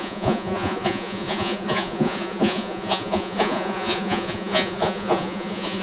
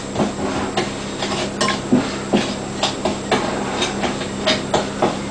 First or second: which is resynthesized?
first